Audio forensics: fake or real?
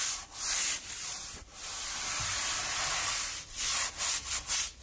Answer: real